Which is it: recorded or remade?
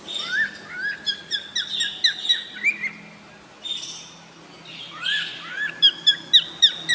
recorded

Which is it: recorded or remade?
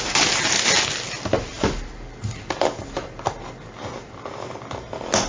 recorded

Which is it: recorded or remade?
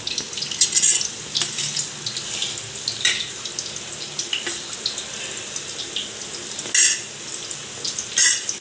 recorded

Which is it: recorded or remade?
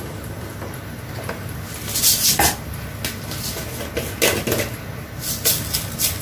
recorded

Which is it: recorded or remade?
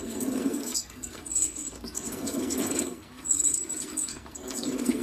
remade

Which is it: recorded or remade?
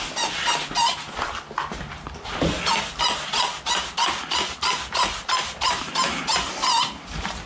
recorded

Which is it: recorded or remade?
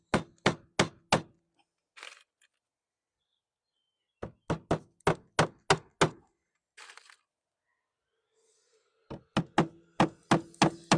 recorded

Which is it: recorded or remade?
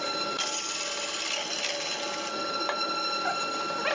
recorded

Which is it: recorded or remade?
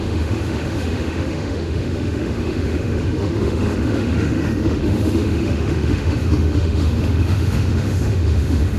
remade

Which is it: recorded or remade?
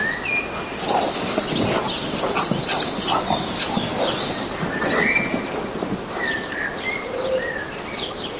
recorded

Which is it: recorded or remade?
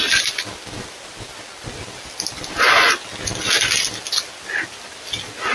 recorded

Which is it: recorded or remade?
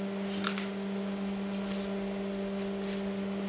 recorded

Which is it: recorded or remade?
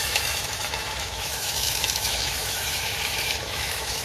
remade